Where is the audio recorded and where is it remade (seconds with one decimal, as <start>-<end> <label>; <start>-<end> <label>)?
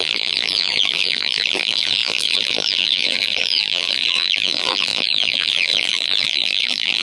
0.0-7.0 remade